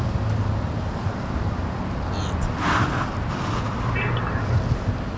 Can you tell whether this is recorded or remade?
recorded